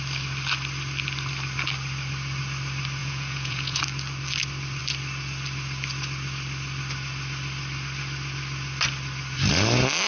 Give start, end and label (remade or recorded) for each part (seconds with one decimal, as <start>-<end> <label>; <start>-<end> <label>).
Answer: 0.0-3.0 recorded; 3.0-3.8 remade; 3.8-10.1 recorded